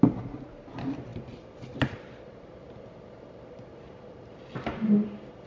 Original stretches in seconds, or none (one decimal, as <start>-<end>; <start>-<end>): 0.0-5.5